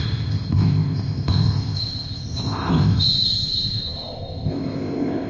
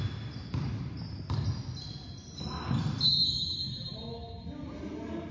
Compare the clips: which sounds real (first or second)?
second